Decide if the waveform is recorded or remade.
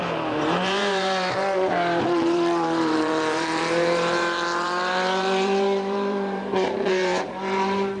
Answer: remade